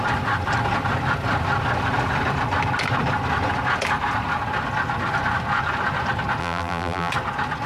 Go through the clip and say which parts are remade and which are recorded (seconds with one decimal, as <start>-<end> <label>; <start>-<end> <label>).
0.0-6.4 recorded; 6.4-7.1 remade; 7.1-7.7 recorded